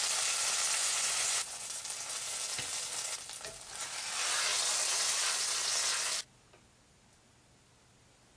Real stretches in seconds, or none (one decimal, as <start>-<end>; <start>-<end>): 0.0-0.8; 1.8-8.4